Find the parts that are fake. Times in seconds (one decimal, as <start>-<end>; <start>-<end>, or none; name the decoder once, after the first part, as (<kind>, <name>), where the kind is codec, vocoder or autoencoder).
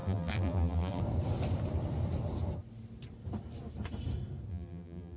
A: 0.0-1.0 (vocoder, BigVGAN v2); 4.5-5.2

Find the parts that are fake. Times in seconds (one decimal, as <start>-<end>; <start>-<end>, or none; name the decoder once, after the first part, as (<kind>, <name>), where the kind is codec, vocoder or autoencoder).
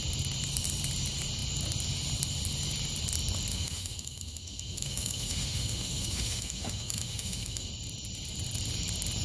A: 3.5-7.7 (autoencoder, DAC-VAE)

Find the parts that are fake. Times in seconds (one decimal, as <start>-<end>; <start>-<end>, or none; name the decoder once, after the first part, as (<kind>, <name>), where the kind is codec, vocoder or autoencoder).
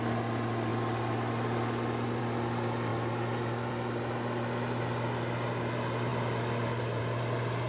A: none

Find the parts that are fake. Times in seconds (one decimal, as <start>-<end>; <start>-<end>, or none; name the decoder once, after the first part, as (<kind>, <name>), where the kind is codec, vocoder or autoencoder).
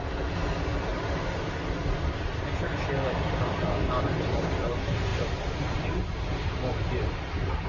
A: 0.9-2.7 (vocoder, BigVGAN v2); 5.1-7.3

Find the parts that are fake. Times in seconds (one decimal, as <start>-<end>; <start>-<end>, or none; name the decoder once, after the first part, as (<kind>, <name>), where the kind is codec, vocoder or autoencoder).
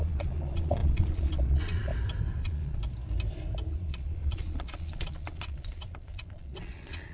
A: 0.0-1.9 (vocoder, Vocos); 2.4-2.8; 3.7-7.1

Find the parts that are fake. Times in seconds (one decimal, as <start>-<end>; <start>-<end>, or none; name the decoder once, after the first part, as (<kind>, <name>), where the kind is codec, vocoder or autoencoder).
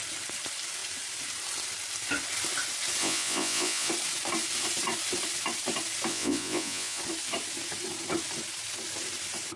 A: 3.0-3.9 (vocoder, Vocos); 6.1-7.0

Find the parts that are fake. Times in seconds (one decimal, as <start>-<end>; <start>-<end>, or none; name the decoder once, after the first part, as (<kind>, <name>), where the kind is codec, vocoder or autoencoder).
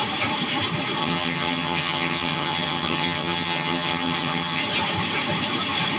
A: 1.0-4.6 (vocoder, HiFi-GAN)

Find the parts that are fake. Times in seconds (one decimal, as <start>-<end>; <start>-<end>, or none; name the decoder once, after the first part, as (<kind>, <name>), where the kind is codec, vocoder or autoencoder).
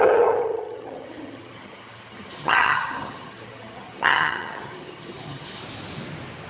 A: 0.0-5.6 (vocoder, HiFi-GAN)